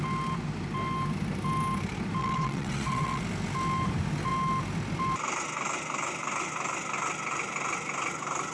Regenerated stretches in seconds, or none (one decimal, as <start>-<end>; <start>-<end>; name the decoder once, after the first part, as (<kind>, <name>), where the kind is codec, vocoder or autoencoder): 2.2-3.2 (vocoder, WaveNeXt)